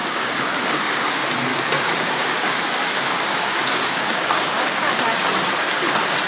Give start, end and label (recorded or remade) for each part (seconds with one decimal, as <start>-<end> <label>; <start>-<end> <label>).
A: 0.0-1.1 remade; 1.1-1.5 recorded; 1.5-5.0 remade; 5.0-6.3 recorded